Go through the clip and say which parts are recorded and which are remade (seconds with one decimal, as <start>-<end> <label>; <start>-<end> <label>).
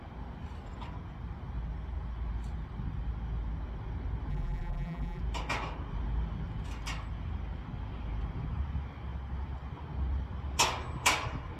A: 0.0-4.3 recorded; 4.3-5.2 remade; 5.2-11.6 recorded